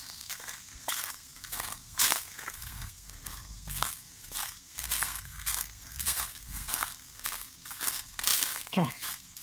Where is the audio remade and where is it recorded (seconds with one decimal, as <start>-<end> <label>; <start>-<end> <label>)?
0.0-9.4 remade